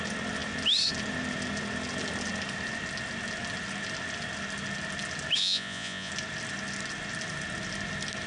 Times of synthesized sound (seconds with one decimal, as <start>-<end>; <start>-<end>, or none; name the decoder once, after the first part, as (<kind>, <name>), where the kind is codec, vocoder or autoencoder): 5.4-6.1 (vocoder, Vocos)